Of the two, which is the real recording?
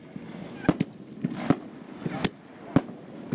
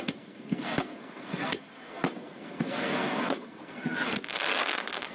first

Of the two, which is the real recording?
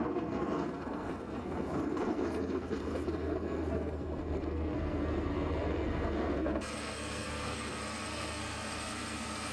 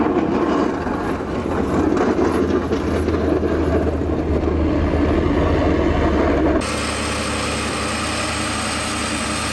second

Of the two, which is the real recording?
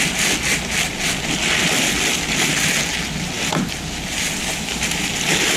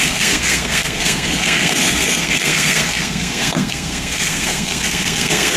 first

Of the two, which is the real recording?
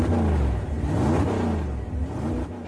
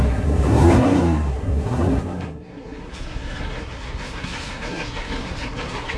first